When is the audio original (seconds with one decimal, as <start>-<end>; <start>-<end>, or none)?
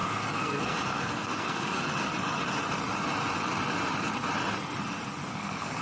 1.8-5.3